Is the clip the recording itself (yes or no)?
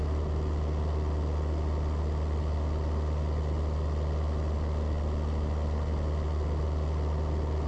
yes